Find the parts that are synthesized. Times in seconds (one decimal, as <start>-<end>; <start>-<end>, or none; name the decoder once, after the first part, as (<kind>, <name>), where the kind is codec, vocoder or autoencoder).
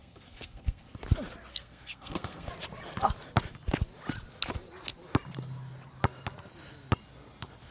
0.0-1.0 (codec, SNAC); 1.5-2.5